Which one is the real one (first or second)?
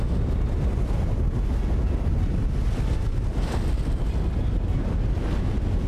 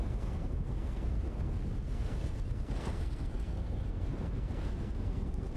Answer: first